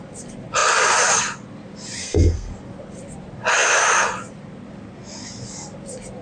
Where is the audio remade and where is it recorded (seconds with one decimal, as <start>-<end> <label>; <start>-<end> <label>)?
0.0-2.0 recorded; 2.0-2.5 remade; 2.5-6.2 recorded